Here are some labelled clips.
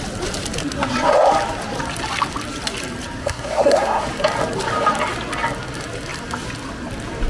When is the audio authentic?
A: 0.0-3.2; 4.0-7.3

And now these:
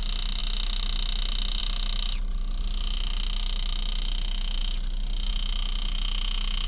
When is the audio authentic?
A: 0.0-6.7